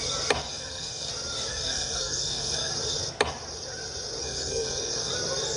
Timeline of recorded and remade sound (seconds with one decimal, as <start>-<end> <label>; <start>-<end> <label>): 0.0-0.5 recorded; 0.5-1.1 remade; 1.1-1.5 recorded; 1.5-2.7 remade; 2.7-4.2 recorded; 4.2-5.1 remade; 5.1-5.6 recorded